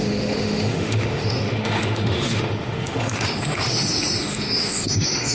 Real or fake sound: fake